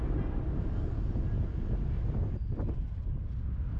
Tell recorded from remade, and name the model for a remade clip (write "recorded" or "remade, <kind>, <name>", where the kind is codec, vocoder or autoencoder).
recorded